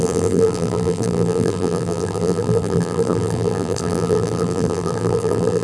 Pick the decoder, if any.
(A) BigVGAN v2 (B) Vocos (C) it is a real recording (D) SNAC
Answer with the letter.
A